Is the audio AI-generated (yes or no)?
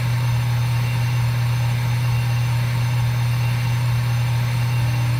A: no